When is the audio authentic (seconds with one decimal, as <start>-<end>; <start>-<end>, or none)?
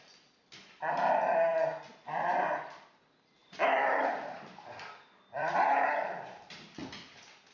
0.0-3.4; 5.6-7.5